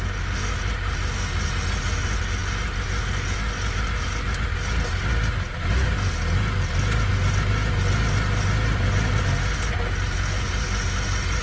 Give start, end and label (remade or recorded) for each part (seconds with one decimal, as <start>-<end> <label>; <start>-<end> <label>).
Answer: 0.0-11.4 recorded